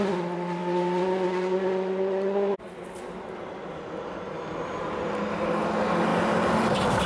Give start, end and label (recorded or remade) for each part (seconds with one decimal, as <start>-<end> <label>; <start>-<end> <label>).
0.0-6.1 recorded; 6.1-6.6 remade; 6.6-7.1 recorded